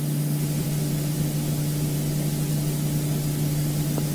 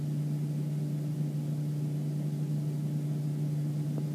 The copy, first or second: first